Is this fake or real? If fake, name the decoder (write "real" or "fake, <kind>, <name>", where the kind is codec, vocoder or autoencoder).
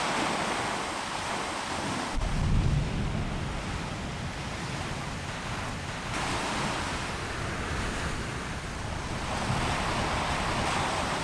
real